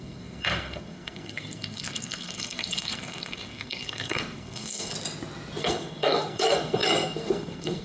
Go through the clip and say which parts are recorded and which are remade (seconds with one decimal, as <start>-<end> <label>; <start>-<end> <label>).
0.0-4.9 remade; 4.9-5.6 recorded; 5.6-7.8 remade